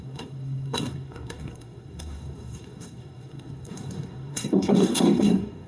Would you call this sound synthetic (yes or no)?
yes